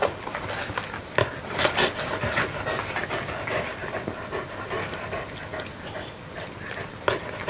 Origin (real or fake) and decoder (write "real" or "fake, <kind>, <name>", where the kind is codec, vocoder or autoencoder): real